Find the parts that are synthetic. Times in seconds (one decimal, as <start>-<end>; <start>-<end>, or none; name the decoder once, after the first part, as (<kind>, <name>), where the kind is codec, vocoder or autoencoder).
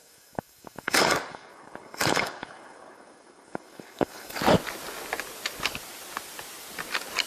0.0-4.4 (codec, DAC)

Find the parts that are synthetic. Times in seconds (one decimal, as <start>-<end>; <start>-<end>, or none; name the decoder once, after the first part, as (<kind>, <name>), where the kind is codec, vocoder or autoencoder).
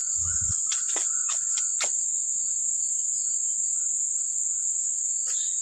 0.0-1.6 (vocoder, Vocos); 2.5-3.3; 3.7-4.4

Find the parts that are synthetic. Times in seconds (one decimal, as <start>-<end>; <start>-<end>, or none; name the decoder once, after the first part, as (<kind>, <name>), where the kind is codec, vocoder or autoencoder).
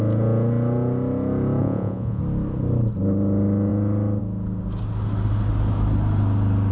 1.6-2.2 (vocoder, Vocos)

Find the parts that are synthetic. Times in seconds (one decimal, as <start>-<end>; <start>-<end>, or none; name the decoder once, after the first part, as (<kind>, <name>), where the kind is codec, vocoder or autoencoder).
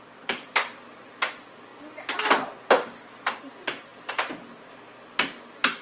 none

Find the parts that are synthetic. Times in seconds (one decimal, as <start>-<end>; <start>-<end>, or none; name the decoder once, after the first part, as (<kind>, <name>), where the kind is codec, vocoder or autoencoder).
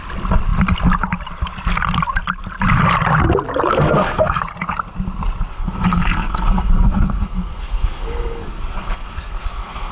3.7-4.4 (codec, SNAC); 5.5-9.9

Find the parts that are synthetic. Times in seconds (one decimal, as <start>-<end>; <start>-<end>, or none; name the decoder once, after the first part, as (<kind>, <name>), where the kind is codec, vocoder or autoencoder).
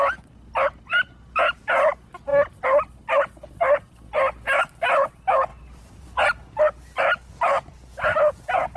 5.5-6.6 (vocoder, BigVGAN v2)